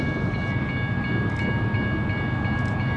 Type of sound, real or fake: real